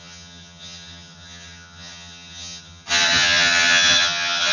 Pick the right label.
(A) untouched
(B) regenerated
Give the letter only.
B